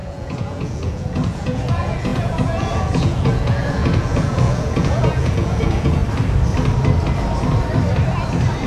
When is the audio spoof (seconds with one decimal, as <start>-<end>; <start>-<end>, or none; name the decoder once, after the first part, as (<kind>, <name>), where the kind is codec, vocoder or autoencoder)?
0.0-6.0 (vocoder, Vocos)